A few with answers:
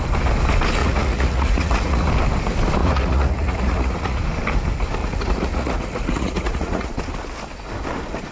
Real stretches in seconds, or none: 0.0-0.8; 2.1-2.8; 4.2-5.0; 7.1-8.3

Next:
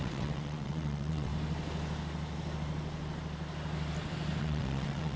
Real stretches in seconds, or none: 1.3-4.4

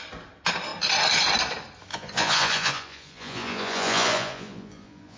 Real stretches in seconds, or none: 0.0-1.9

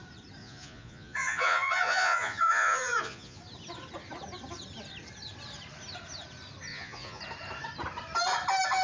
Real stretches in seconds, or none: 0.0-0.4; 3.4-6.7; 7.2-8.8

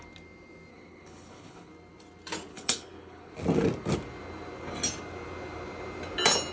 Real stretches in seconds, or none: 0.0-0.7; 1.7-2.5; 3.3-6.5

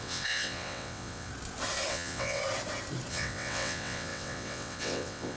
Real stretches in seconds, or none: 1.3-1.9; 2.4-3.1

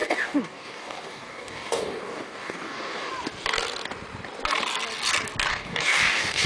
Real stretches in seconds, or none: 3.1-5.5